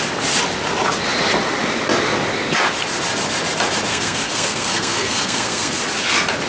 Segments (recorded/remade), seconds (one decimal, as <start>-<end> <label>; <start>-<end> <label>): 0.0-3.9 recorded; 3.9-5.8 remade; 5.8-6.5 recorded